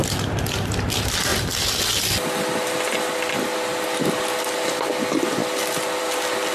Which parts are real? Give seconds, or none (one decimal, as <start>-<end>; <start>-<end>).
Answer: 0.0-6.5